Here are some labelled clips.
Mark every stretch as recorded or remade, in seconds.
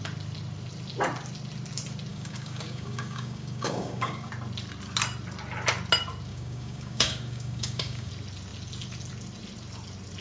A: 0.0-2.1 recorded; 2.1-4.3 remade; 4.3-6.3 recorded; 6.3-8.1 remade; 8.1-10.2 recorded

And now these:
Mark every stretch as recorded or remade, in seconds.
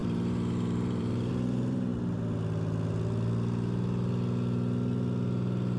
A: 0.0-1.9 remade; 1.9-5.8 recorded